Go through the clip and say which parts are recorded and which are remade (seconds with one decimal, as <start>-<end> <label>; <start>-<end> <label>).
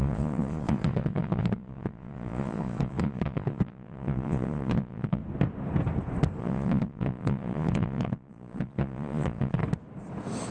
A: 0.0-5.2 remade; 5.2-6.4 recorded; 6.4-9.6 remade; 9.6-10.5 recorded